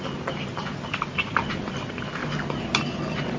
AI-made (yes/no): no